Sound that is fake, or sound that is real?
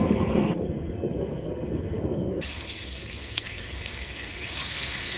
fake